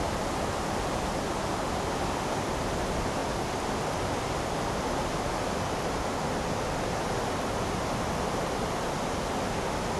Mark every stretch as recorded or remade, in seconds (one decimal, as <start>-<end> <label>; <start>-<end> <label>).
0.0-10.0 recorded